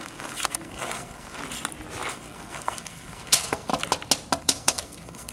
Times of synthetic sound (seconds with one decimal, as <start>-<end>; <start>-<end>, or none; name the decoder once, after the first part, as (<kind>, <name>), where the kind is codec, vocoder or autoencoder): 0.0-1.4 (codec, SNAC); 2.1-3.7; 4.4-5.3